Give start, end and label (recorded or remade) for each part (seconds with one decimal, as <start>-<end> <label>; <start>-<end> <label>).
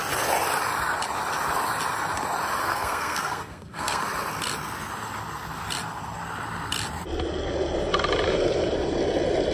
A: 0.0-2.6 recorded; 2.6-4.0 remade; 4.0-9.5 recorded